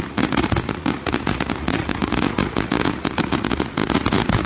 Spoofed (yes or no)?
yes